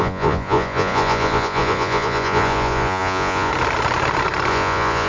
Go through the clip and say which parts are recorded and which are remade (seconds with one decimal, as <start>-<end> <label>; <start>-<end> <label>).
0.0-3.5 remade; 3.5-4.5 recorded; 4.5-5.1 remade